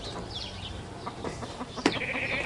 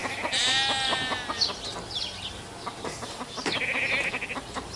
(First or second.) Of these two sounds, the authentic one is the second